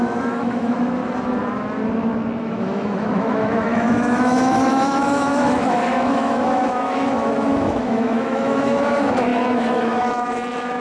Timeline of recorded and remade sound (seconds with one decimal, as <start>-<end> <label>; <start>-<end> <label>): 0.0-1.0 remade; 1.0-2.4 recorded; 2.4-10.8 remade